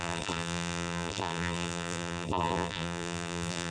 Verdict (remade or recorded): remade